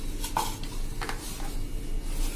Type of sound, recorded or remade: recorded